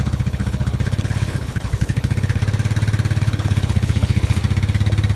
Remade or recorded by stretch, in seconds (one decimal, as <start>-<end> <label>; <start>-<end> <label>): 0.0-2.4 remade; 2.4-3.2 recorded; 3.2-4.4 remade; 4.4-5.2 recorded

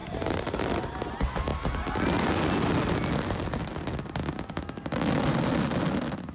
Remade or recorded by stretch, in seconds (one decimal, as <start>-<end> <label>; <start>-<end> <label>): 0.0-1.1 remade; 1.1-6.3 recorded